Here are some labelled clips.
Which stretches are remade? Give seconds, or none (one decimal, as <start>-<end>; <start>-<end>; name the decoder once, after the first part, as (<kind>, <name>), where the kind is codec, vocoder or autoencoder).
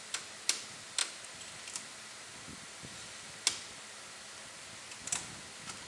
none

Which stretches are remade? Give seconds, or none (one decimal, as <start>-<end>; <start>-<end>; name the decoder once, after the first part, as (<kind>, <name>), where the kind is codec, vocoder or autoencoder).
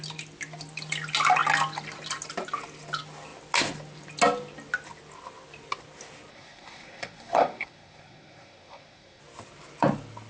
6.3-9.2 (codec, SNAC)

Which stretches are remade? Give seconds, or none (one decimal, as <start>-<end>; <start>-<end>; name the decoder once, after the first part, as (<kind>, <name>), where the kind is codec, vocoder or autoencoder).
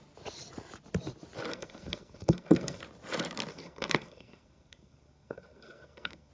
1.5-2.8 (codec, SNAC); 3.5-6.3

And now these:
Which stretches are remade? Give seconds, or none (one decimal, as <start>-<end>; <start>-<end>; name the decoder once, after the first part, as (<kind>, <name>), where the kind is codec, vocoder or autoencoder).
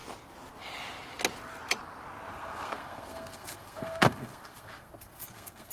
2.3-5.7 (codec, SNAC)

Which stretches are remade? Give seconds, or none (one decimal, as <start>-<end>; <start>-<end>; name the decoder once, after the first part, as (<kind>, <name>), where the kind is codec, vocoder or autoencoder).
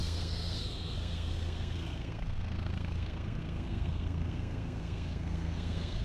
0.0-6.0 (codec, SNAC)